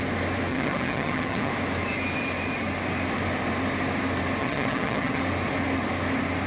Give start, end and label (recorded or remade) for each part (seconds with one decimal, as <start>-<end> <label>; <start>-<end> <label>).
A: 0.0-0.5 recorded; 0.5-1.5 remade; 1.5-4.4 recorded; 4.4-5.2 remade; 5.2-6.5 recorded